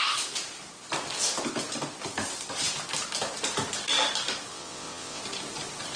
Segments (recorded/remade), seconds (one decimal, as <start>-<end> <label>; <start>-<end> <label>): 0.0-4.5 recorded; 4.5-5.2 remade; 5.2-6.0 recorded